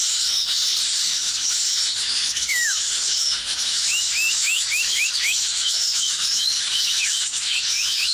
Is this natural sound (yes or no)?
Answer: no